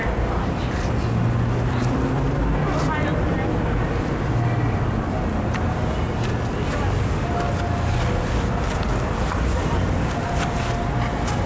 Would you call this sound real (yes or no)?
yes